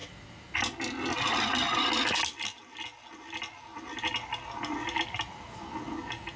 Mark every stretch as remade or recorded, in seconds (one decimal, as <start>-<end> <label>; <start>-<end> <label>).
0.0-6.4 recorded